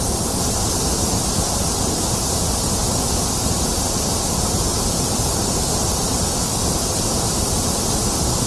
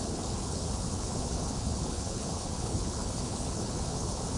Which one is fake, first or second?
second